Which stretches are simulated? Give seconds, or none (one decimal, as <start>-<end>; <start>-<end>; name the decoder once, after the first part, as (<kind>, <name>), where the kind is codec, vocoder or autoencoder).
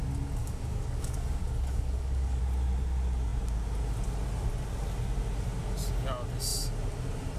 0.4-2.4 (codec, DAC)